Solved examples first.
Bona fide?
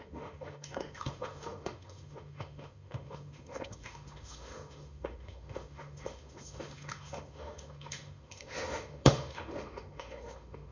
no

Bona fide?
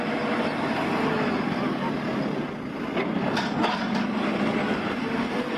yes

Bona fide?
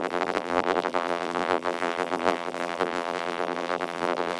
no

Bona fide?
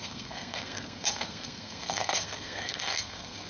no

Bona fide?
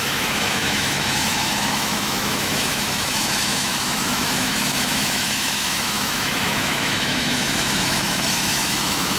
no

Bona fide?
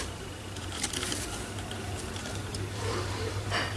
no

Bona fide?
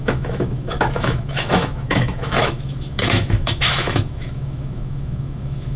no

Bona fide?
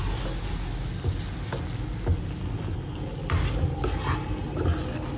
yes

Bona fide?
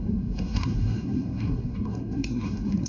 no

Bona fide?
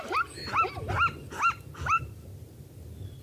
yes